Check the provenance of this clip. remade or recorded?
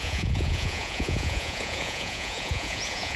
remade